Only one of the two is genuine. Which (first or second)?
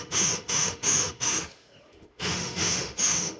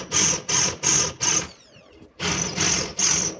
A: second